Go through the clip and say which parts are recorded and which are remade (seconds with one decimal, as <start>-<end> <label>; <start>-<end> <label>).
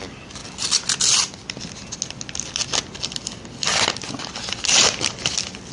0.0-5.7 recorded